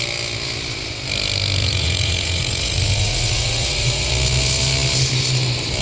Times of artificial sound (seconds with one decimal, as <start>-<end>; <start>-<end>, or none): 1.6-4.1